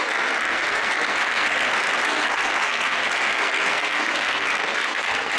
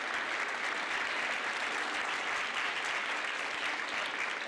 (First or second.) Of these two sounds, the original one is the second